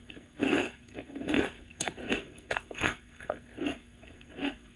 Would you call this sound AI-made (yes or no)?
yes